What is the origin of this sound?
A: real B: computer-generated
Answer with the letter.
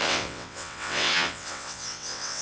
B